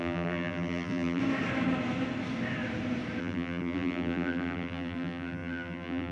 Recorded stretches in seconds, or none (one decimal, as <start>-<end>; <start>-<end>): 1.2-3.2